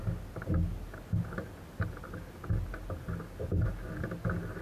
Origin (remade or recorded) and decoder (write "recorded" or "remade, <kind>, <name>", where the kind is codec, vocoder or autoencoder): recorded